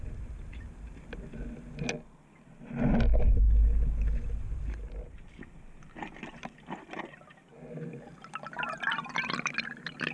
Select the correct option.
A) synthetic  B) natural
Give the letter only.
B